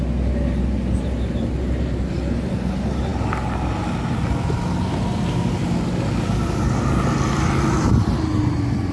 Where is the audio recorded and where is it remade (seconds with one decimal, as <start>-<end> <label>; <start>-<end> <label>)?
0.0-8.9 recorded